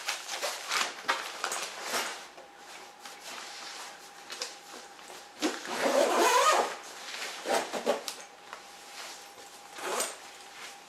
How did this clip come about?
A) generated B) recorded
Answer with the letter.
A